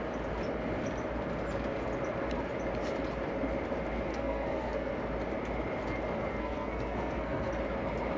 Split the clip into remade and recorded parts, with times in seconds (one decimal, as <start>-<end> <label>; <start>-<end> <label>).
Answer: 0.0-4.1 recorded; 4.1-4.9 remade; 4.9-6.3 recorded; 6.3-7.5 remade; 7.5-8.2 recorded